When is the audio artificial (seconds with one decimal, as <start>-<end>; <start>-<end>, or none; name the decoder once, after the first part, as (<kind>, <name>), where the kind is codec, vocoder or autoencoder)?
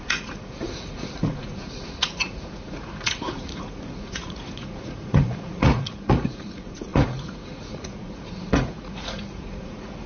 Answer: 0.0-10.1 (vocoder, Vocos)